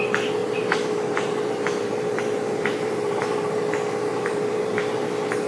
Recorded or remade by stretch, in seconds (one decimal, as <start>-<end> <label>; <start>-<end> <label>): 0.0-0.4 recorded; 0.4-3.6 remade; 3.6-4.1 recorded; 4.1-5.0 remade; 5.0-5.5 recorded